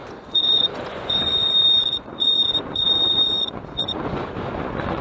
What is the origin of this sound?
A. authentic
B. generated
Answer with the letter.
B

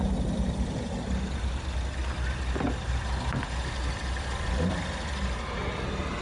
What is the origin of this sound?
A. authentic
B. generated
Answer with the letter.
A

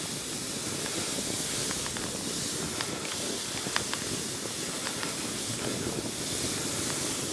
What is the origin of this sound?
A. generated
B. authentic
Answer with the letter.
B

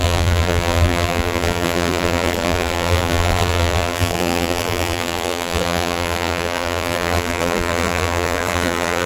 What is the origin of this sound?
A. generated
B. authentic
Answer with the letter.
A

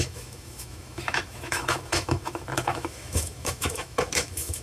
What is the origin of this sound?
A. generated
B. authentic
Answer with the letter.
A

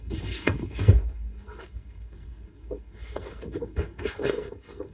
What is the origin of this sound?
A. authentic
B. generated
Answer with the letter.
B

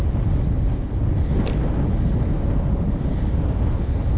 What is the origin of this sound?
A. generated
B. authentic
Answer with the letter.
B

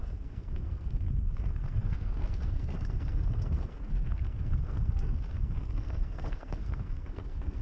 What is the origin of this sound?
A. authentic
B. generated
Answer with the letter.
B